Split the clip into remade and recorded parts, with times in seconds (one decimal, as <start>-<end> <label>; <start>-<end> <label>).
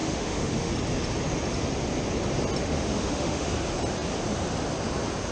0.0-0.7 remade; 0.7-2.6 recorded; 2.6-3.5 remade; 3.5-5.3 recorded